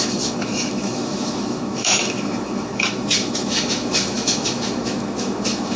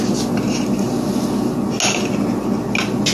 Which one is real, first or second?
second